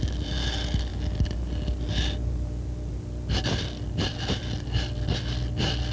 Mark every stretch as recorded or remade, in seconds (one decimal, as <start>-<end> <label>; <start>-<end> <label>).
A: 0.0-5.9 recorded